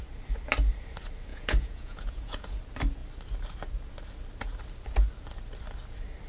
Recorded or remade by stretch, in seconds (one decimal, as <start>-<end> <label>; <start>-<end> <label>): 0.0-1.3 recorded; 1.3-2.6 remade; 2.6-6.3 recorded